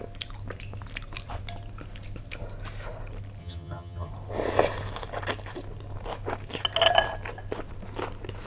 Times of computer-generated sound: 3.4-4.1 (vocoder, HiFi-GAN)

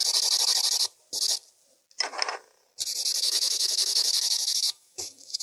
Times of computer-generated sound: 3.2-5.4 (autoencoder, DAC-VAE)

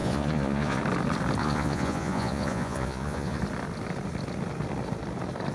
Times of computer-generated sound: 0.0-0.8 (vocoder, Vocos); 1.4-3.4

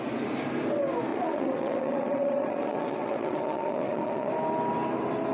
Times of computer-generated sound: 1.1-4.3 (vocoder, Vocos)